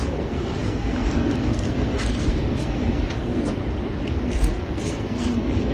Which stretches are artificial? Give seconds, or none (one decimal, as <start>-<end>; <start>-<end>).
0.0-3.6; 4.1-5.7